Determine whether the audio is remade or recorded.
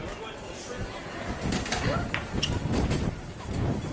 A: recorded